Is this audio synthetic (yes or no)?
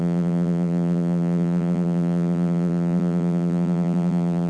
yes